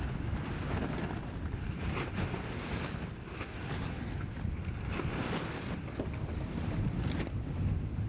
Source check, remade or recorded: recorded